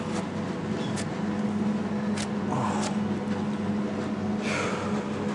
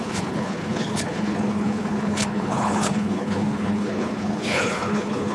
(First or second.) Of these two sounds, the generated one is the second